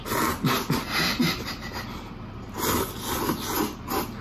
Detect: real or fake real